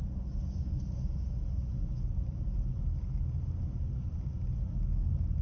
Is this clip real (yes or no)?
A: yes